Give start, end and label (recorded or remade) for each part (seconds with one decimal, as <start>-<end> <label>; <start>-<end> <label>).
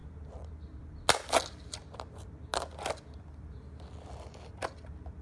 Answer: 0.0-5.2 recorded